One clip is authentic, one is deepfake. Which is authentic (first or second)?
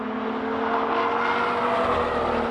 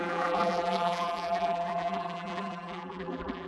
first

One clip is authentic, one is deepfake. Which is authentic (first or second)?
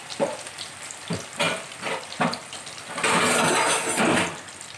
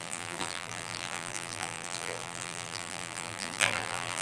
first